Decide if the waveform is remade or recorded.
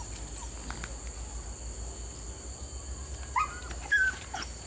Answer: recorded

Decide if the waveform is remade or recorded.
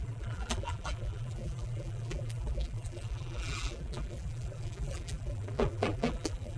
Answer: remade